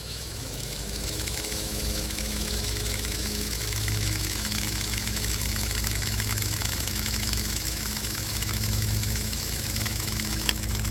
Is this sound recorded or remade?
remade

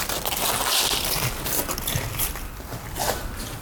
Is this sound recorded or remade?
recorded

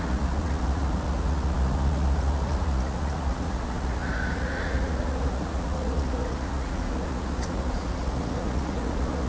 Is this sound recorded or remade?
remade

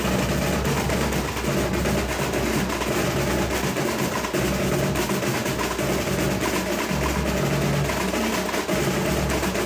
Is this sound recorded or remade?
recorded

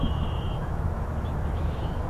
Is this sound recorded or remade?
remade